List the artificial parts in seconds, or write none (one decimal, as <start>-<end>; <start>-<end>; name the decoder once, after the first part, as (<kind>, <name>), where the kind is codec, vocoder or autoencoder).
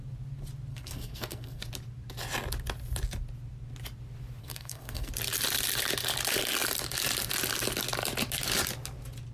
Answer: 0.7-1.6 (codec, SNAC); 4.4-5.1